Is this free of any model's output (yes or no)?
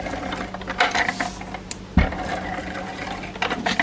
yes